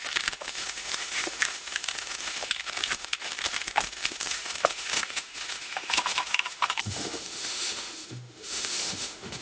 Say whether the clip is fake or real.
fake